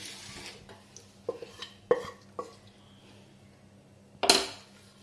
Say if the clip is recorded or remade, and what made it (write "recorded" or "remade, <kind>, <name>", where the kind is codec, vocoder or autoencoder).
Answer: recorded